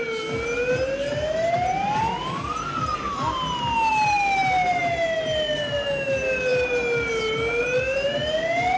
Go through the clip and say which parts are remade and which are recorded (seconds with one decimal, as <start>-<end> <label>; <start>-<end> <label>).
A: 0.0-8.8 recorded